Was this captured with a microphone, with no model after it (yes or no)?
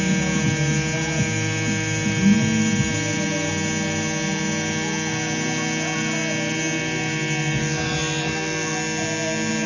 yes